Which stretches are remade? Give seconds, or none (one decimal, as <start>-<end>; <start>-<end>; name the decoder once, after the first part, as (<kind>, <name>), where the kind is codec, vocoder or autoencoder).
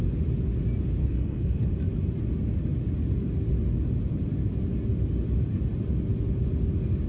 1.0-1.7 (codec, SNAC)